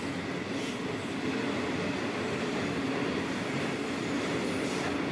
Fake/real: real